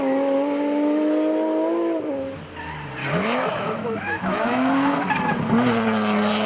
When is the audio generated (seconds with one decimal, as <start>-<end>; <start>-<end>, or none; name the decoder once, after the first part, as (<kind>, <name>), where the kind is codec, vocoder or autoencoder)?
3.0-5.1 (autoencoder, DAC-VAE)